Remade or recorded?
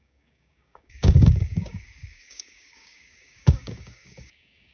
remade